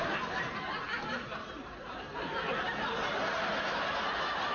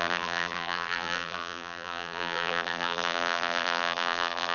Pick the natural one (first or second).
first